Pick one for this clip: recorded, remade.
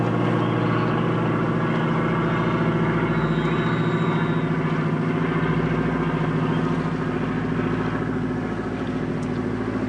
recorded